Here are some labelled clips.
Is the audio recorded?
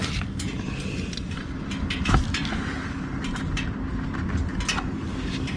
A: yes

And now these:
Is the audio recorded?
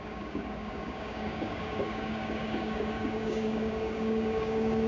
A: no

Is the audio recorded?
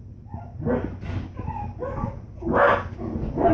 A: yes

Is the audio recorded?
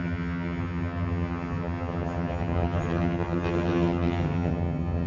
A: no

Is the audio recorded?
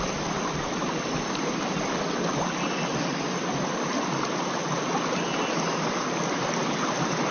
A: yes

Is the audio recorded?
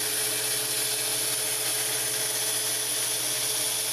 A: yes